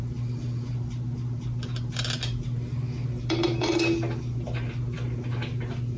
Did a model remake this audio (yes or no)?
no